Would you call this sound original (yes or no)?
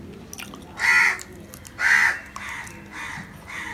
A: yes